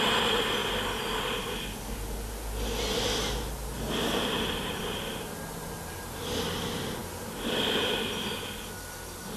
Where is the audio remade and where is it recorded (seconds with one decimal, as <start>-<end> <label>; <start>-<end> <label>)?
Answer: 0.0-9.4 recorded